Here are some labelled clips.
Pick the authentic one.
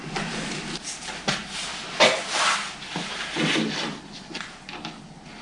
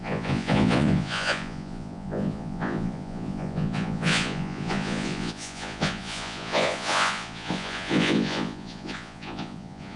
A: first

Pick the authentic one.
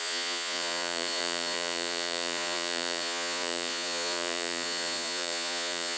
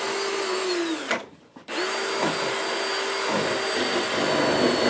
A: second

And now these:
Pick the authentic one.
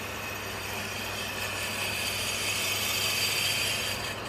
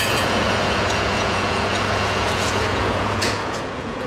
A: first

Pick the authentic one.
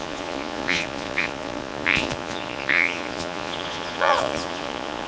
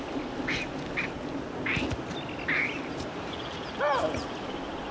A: second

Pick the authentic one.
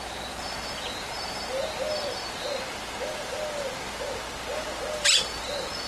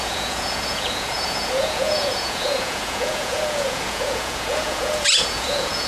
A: first